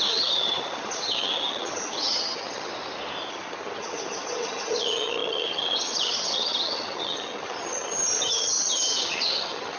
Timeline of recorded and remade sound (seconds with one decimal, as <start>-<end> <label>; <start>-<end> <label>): 0.0-2.7 remade; 2.7-3.3 recorded; 3.3-9.8 remade